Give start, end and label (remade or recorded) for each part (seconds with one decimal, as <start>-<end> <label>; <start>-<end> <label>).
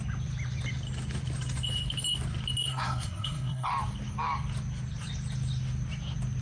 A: 0.0-2.7 recorded; 2.7-3.7 remade; 3.7-6.4 recorded